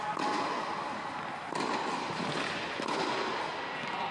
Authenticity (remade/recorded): recorded